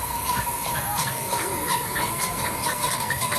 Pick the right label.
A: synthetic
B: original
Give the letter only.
A